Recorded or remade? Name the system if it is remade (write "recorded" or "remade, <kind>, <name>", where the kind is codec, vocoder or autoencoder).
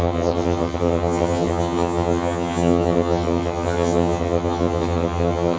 remade, vocoder, HiFi-GAN